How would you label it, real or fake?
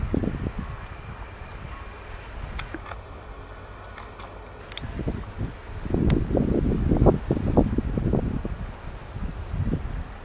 real